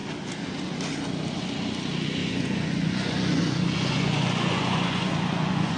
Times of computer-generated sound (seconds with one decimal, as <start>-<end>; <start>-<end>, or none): 2.2-5.8